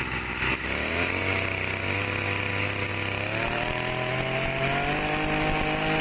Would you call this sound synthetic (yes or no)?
no